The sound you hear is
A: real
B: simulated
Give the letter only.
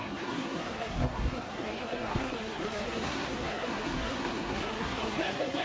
B